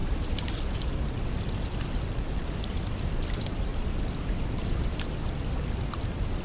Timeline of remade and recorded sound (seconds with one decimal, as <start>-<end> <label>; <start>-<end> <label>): 0.0-1.3 remade; 1.3-3.7 recorded; 3.7-5.2 remade; 5.2-6.4 recorded